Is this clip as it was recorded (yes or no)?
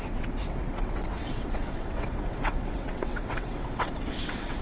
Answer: no